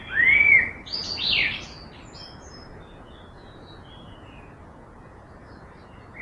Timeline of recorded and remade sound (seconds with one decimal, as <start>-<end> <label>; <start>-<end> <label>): 0.0-6.2 recorded